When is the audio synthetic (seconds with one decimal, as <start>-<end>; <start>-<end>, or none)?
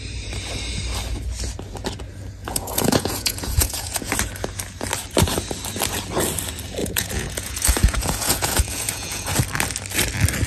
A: 2.4-4.1; 6.8-9.3